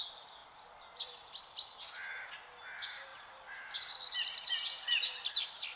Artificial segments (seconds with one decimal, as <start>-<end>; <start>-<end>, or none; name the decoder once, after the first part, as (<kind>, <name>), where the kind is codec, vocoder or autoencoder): 0.4-2.4 (vocoder, BigVGAN v2)